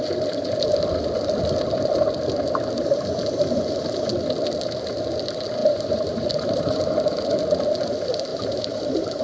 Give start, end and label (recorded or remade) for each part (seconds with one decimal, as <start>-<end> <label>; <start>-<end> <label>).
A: 0.0-5.6 recorded; 5.6-6.8 remade; 6.8-8.3 recorded; 8.3-9.2 remade